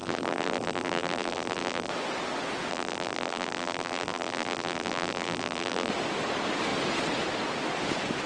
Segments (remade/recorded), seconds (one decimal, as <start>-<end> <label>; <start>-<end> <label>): 0.0-1.9 remade; 1.9-2.7 recorded; 2.7-5.9 remade; 5.9-8.3 recorded